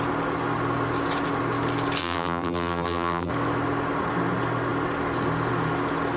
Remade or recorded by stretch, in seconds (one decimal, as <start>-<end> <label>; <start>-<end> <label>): 0.0-2.0 recorded; 2.0-3.3 remade; 3.3-6.2 recorded